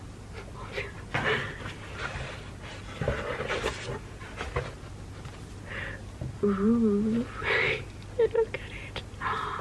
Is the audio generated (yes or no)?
no